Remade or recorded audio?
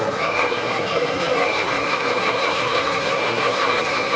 remade